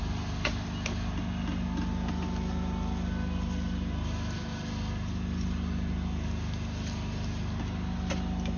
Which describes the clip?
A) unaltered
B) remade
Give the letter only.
A